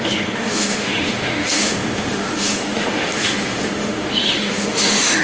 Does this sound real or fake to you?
fake